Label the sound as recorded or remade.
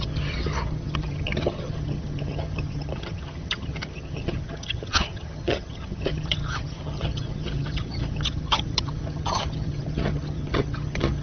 remade